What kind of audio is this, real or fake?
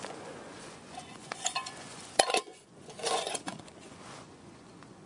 fake